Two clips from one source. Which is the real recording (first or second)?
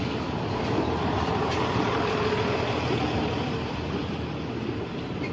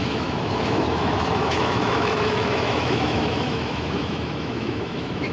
first